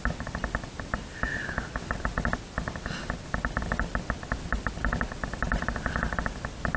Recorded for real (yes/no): yes